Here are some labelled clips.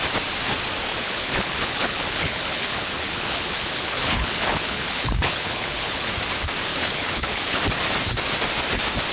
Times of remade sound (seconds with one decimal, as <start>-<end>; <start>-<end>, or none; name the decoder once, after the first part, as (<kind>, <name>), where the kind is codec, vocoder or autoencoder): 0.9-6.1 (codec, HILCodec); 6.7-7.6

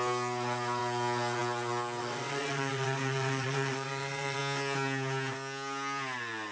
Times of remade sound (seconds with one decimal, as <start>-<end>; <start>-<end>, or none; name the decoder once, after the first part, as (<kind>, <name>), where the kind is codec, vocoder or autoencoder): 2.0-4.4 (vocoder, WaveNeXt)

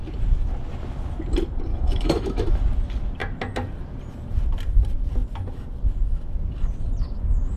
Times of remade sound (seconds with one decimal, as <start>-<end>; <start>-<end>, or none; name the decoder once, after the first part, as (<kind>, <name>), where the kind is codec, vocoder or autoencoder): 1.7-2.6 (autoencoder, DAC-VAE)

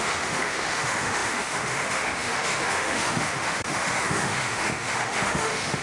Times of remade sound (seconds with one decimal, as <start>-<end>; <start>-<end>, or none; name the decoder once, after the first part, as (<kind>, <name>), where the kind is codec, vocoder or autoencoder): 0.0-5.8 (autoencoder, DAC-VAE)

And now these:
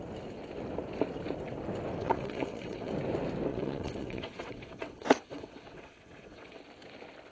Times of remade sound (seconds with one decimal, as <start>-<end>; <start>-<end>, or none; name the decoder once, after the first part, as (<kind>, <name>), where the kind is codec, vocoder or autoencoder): 2.0-2.9 (vocoder, WaveNeXt); 3.5-6.6

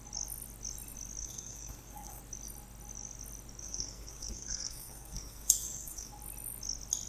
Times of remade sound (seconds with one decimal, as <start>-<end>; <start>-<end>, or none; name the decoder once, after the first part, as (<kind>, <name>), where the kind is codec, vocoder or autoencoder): 1.2-2.2 (codec, SNAC); 3.6-6.1

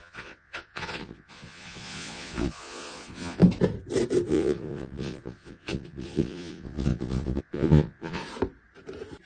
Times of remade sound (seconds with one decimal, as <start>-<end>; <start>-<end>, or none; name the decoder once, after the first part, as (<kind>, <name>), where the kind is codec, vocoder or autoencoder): 0.0-3.4 (vocoder, Vocos); 4.3-8.2

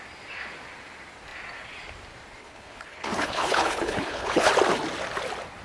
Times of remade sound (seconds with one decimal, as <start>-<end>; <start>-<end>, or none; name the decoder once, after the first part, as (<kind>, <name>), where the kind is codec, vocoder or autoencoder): 2.4-4.5 (codec, HILCodec)